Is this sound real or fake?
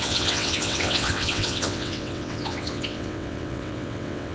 fake